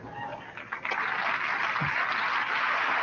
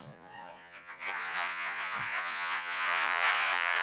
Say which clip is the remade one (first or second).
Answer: second